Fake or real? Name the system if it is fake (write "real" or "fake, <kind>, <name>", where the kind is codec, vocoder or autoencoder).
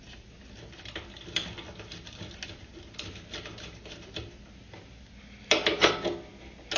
real